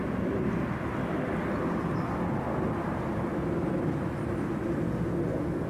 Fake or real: real